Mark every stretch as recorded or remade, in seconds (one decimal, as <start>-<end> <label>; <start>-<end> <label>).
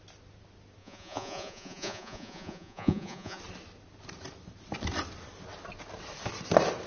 0.0-0.8 recorded; 0.8-3.4 remade; 3.4-6.9 recorded